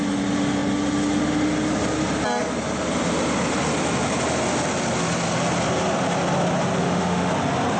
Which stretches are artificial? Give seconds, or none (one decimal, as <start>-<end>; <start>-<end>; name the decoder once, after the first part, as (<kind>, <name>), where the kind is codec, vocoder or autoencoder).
6.8-7.3 (autoencoder, DAC-VAE)